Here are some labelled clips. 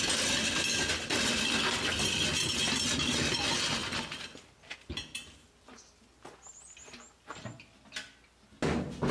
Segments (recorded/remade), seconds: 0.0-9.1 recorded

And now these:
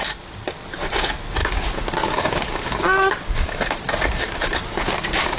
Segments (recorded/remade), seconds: 0.0-1.4 recorded; 1.4-3.6 remade; 3.6-4.2 recorded; 4.2-5.4 remade

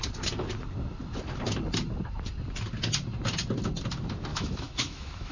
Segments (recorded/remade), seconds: 0.0-4.3 recorded; 4.3-5.3 remade

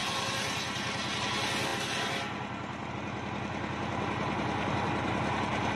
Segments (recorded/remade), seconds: 0.0-5.8 recorded

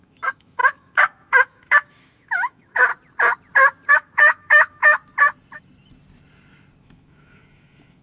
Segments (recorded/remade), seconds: 0.0-2.9 remade; 2.9-3.9 recorded; 3.9-5.0 remade; 5.0-6.8 recorded; 6.8-8.0 remade